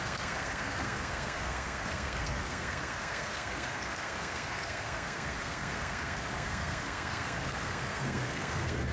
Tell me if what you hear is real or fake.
fake